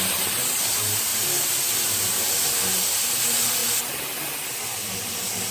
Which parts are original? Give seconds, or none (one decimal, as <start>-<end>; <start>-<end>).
0.0-5.5